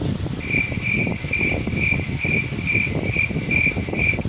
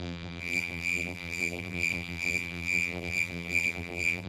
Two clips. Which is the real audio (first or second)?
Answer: first